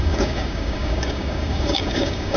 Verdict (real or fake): fake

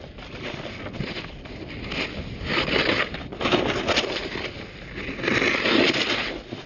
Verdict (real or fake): real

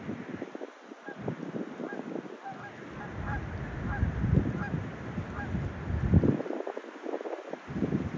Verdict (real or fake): real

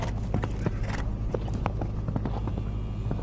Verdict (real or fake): real